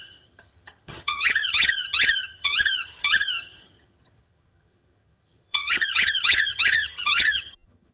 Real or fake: fake